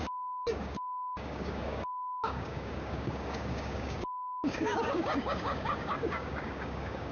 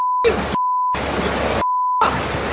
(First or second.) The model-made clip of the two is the first